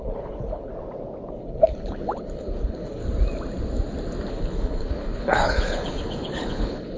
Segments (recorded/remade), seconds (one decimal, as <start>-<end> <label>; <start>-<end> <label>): 0.0-0.7 remade; 0.7-1.3 recorded; 1.3-3.0 remade; 3.0-4.3 recorded; 4.3-7.0 remade